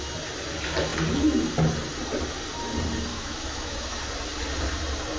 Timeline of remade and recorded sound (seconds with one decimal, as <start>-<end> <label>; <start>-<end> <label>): 0.0-3.1 recorded; 3.1-4.0 remade; 4.0-5.2 recorded